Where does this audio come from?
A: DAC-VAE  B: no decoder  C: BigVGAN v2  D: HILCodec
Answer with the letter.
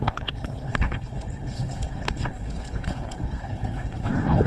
D